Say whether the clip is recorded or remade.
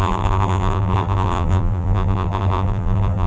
remade